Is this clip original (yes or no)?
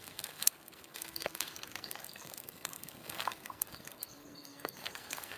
no